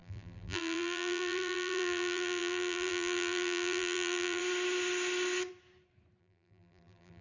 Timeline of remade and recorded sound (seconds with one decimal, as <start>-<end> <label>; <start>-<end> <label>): 0.0-4.4 remade; 4.4-6.2 recorded; 6.2-7.2 remade